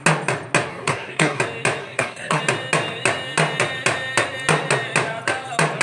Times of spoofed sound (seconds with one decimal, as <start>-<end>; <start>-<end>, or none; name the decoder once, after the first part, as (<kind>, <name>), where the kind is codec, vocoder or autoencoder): 0.7-1.4 (codec, SNAC); 1.8-2.4